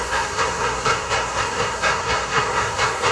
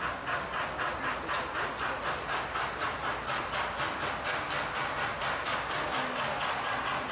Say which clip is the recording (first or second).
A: second